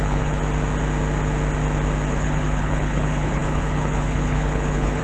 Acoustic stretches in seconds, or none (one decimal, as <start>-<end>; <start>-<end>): 0.4-2.1